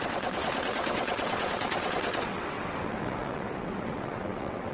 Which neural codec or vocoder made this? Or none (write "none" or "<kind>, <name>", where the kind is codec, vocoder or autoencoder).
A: vocoder, WaveNeXt